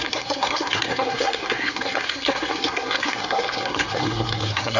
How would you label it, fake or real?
fake